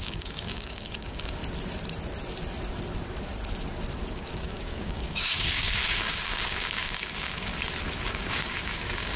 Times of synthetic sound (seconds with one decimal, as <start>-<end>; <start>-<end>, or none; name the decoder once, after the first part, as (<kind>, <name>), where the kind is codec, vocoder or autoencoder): 0.0-1.4 (codec, DAC); 4.1-7.5; 8.1-9.2